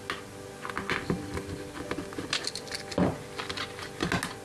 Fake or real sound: real